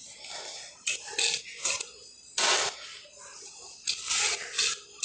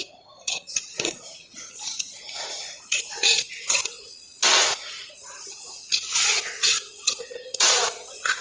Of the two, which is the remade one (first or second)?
second